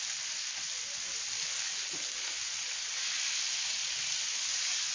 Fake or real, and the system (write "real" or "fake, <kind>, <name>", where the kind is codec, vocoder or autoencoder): real